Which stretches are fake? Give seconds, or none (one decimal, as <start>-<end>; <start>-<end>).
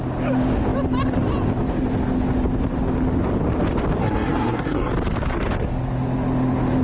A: 4.0-4.9